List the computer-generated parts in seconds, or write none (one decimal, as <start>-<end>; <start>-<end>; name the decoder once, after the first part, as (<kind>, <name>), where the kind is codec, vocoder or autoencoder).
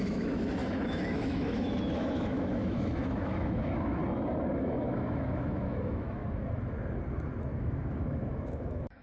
0.0-4.0 (autoencoder, DAC-VAE); 4.6-6.2; 7.6-9.0